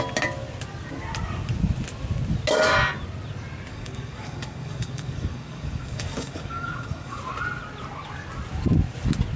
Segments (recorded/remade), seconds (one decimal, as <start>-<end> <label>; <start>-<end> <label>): 0.0-3.7 recorded; 3.7-7.2 remade; 7.2-9.4 recorded